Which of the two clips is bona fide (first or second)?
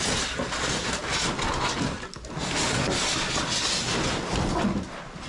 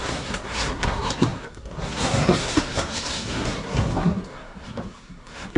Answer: first